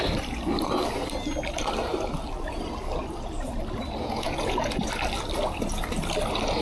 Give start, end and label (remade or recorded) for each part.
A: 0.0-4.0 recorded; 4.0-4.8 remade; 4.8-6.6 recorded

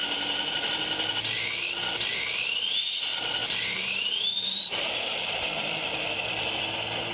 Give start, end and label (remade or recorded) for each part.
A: 0.0-3.1 recorded; 3.1-6.6 remade; 6.6-7.1 recorded

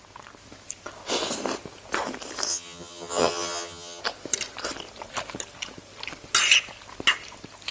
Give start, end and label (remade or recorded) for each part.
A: 0.0-2.5 recorded; 2.5-4.0 remade; 4.0-7.7 recorded

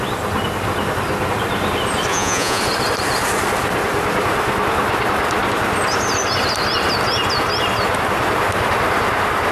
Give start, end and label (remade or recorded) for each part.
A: 0.0-2.1 recorded; 2.1-2.6 remade; 2.6-9.5 recorded

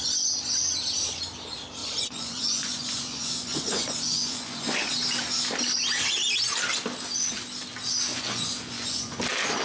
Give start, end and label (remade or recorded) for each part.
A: 0.0-1.8 recorded; 1.8-4.9 remade; 4.9-8.1 recorded; 8.1-9.2 remade; 9.2-9.6 recorded